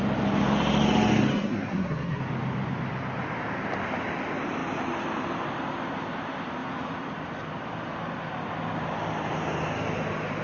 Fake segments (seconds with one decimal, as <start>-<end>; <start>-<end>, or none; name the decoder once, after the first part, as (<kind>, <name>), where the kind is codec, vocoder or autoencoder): 1.3-2.2 (codec, SNAC)